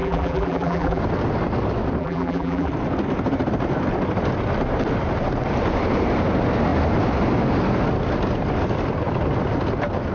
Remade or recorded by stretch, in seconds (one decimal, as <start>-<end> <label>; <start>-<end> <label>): 0.0-1.0 remade; 1.0-2.0 recorded; 2.0-2.7 remade; 2.7-10.1 recorded